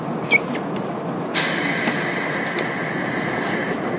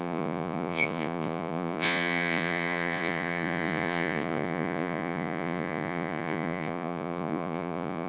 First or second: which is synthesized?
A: second